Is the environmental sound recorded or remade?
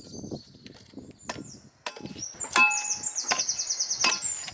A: recorded